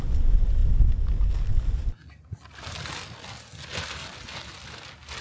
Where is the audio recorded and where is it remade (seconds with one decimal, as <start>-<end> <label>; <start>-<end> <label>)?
0.0-5.2 recorded